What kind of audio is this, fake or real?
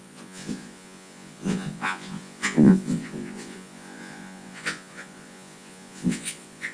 fake